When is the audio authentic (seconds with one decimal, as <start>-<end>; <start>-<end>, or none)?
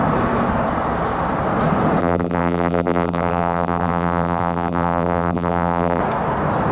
0.0-2.0; 6.0-6.7